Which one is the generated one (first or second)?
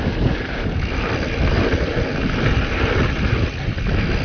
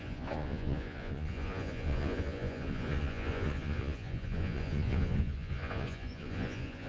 second